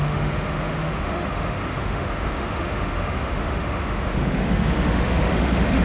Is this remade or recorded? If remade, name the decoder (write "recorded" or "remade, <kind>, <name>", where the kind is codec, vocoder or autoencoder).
remade, autoencoder, DAC-VAE